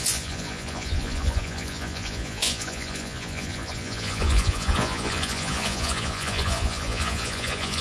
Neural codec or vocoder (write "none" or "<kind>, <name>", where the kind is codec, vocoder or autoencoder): vocoder, Vocos